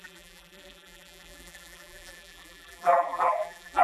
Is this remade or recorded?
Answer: remade